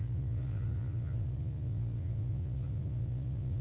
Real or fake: fake